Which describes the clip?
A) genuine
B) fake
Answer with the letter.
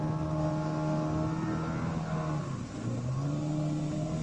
A